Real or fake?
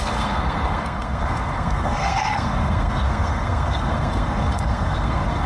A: fake